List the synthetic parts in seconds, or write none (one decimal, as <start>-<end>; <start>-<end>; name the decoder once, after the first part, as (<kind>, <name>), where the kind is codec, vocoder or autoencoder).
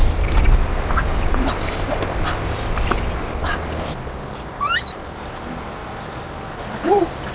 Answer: none